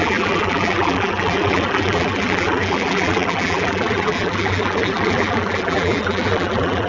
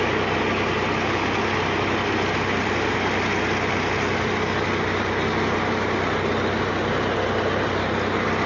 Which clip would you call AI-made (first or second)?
first